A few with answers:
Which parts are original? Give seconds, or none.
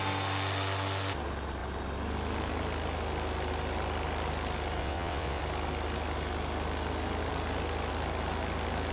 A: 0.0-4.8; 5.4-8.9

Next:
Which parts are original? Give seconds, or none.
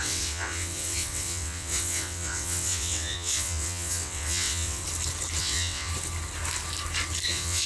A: 4.8-5.4; 5.9-7.3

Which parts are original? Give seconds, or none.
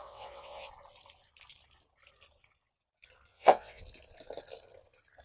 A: 0.7-3.3; 3.8-5.2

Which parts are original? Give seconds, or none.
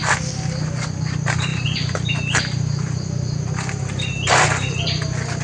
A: 0.0-5.4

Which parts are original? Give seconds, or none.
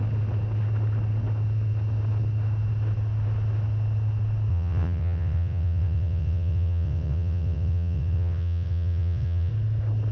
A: 0.0-4.5; 9.5-10.1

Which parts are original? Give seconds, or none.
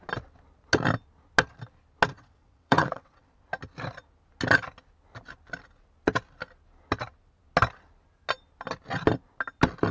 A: 0.0-2.1; 3.4-9.9